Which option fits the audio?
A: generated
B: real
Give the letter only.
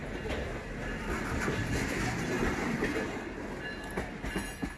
B